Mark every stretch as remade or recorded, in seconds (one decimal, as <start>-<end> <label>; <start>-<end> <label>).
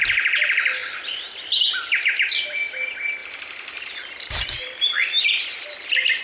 0.0-3.2 recorded; 3.2-5.2 remade; 5.2-6.2 recorded